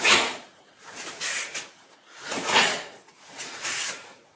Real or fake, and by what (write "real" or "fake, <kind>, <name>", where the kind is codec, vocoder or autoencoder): fake, vocoder, Vocos